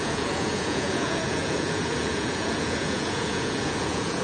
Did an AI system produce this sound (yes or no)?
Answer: yes